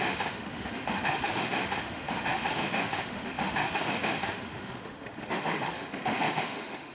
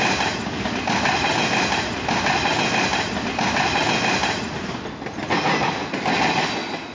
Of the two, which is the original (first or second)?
second